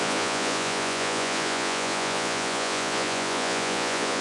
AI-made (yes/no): yes